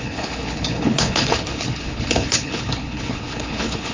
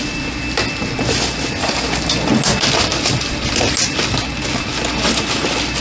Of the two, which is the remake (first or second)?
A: first